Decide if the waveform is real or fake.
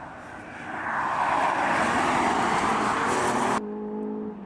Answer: real